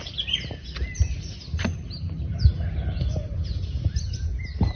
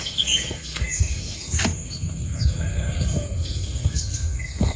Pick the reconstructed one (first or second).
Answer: second